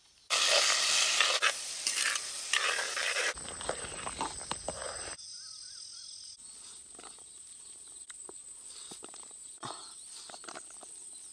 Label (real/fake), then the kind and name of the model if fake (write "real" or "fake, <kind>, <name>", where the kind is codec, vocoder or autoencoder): real